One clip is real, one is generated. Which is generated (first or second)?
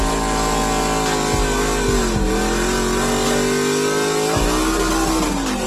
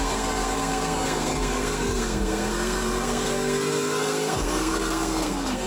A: second